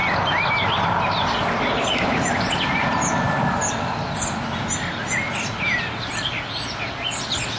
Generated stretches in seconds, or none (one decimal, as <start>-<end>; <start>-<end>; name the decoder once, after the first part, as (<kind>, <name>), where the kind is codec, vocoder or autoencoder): none